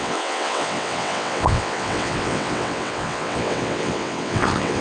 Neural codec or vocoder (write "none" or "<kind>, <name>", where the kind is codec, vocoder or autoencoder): vocoder, WaveNeXt